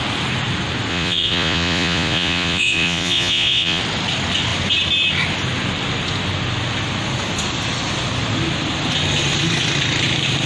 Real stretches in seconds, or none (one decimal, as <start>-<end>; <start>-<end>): 0.0-0.9; 3.8-10.5